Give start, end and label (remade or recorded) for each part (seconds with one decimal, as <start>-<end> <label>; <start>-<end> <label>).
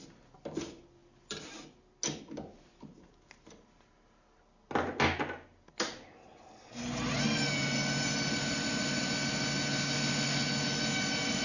0.0-11.4 recorded